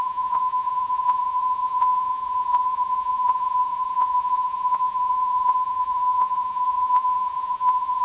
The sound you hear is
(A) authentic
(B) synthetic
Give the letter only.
B